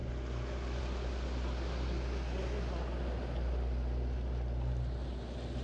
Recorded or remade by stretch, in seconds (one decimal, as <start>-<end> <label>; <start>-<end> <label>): 0.0-5.6 recorded